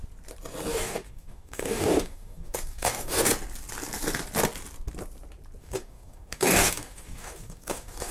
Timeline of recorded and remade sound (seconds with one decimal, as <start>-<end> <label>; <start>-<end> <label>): 0.0-0.7 recorded; 0.7-3.3 remade; 3.3-5.6 recorded; 5.6-8.1 remade